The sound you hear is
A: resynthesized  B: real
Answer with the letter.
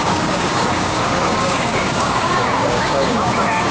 A